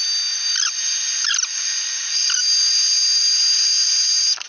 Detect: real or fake real